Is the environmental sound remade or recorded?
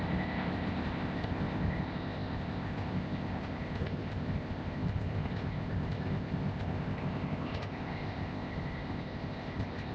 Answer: remade